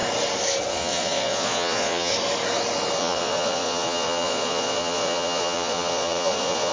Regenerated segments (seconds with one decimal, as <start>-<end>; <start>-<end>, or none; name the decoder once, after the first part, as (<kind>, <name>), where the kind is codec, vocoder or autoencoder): 0.7-2.1 (vocoder, Vocos); 3.0-6.7